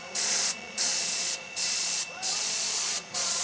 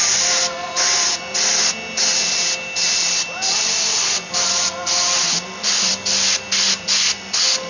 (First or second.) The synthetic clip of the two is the first